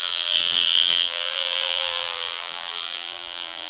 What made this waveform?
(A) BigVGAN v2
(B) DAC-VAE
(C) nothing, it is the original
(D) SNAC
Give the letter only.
A